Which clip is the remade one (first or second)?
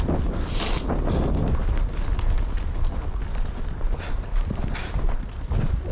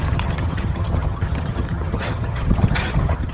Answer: second